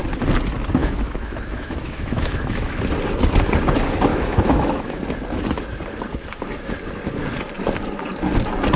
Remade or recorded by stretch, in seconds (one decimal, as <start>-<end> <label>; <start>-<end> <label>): 0.0-0.8 recorded; 0.8-2.8 remade; 2.8-4.1 recorded; 4.1-5.0 remade; 5.0-8.8 recorded